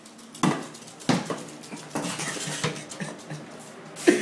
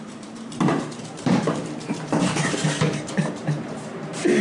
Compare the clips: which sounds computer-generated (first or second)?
second